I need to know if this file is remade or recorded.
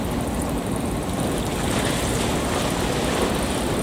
remade